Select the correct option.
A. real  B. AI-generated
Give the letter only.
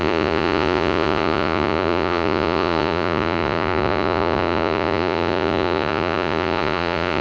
B